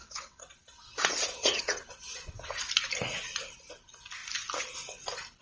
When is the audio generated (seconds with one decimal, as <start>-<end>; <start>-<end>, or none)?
0.0-2.7